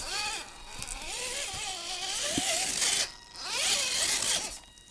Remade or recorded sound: recorded